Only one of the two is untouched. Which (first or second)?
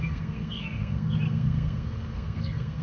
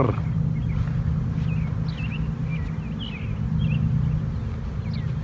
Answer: second